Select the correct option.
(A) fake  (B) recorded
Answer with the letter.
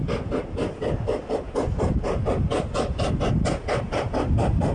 B